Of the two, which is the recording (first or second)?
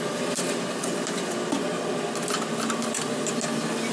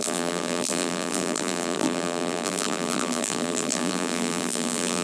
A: first